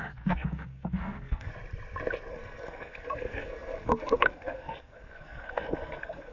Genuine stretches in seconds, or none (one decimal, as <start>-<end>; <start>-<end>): 1.5-2.3